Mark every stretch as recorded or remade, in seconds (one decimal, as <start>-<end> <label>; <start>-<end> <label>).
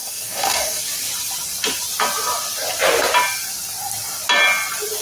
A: 0.0-0.8 remade; 0.8-5.0 recorded